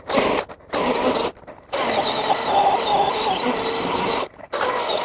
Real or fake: real